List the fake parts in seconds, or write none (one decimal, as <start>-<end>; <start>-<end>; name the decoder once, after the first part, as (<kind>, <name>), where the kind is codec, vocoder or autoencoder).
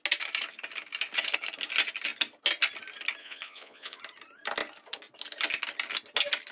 3.2-4.0 (vocoder, Vocos)